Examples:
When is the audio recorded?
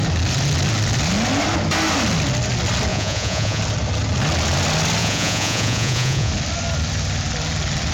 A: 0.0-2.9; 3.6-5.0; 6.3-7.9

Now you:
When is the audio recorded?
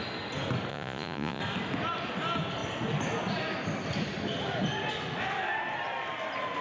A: 0.0-0.7; 1.4-6.6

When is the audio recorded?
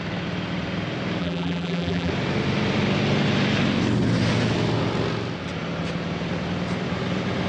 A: 0.0-1.2; 2.1-7.5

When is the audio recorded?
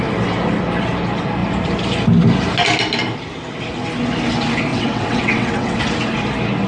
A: 0.0-4.7; 5.8-6.7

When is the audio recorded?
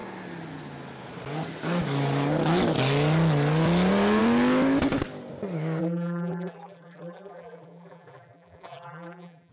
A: 0.0-5.8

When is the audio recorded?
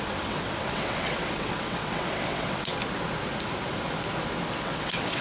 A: 2.8-4.6